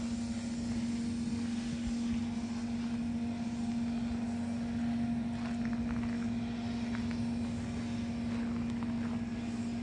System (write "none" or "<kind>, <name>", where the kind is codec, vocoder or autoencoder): none